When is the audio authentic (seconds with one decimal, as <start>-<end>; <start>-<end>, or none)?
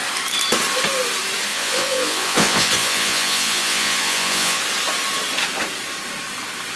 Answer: 0.0-1.5; 4.6-6.8